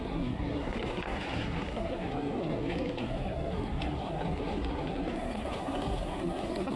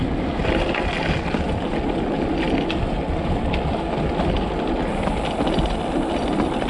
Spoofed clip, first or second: first